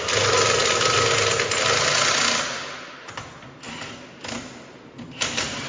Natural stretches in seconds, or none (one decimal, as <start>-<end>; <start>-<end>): 0.0-5.7